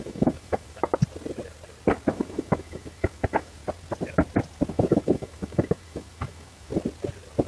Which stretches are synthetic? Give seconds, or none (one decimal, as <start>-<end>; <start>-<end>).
0.0-0.9; 2.1-3.6; 4.7-6.7